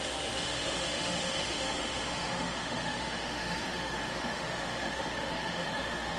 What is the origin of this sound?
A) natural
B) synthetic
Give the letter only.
B